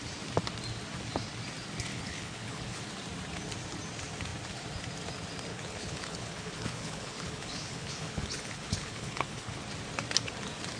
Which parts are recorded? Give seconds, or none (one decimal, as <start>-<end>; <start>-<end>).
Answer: 0.0-1.9; 2.9-5.5; 9.6-10.8